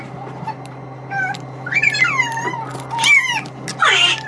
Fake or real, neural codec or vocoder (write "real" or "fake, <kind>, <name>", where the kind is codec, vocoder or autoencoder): real